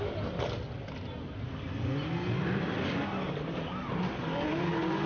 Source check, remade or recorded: recorded